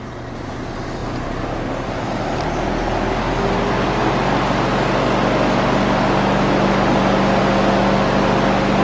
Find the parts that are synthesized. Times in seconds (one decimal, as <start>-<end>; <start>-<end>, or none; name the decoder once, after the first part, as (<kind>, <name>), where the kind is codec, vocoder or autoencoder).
1.0-2.2 (vocoder, BigVGAN v2)

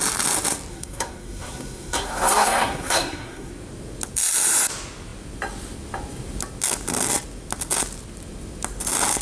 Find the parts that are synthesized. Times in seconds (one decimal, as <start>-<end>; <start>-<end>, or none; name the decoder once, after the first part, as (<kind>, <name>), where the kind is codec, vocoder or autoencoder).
0.7-3.5 (codec, SNAC)